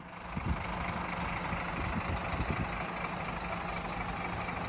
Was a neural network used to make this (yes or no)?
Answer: no